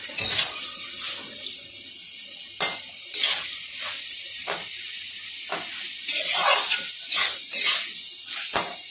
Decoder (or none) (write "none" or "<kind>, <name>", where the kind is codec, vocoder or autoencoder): none